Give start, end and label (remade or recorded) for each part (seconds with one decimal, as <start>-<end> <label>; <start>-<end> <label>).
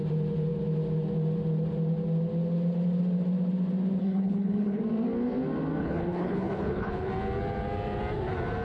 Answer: 0.0-4.0 recorded; 4.0-4.8 remade; 4.8-5.8 recorded; 5.8-7.1 remade; 7.1-8.6 recorded